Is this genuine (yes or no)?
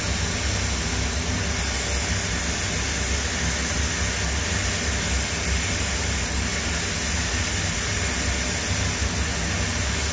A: yes